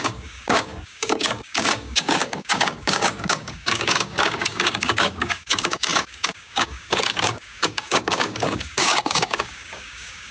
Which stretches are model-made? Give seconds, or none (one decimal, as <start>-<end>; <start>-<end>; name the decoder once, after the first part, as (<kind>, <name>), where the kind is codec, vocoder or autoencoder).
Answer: 0.0-10.3 (codec, DAC)